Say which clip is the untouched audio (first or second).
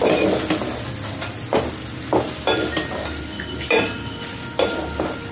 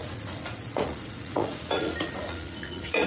first